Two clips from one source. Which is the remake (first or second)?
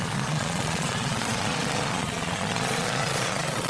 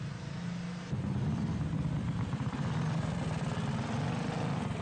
first